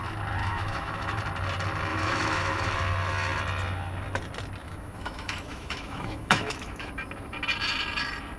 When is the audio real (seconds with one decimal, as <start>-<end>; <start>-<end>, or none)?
0.0-0.4; 1.2-1.9; 2.7-4.6; 6.9-8.4